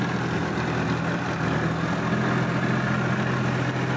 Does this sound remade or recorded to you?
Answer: recorded